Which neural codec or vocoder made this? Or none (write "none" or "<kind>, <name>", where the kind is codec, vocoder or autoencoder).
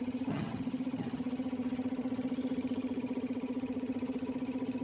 vocoder, HiFi-GAN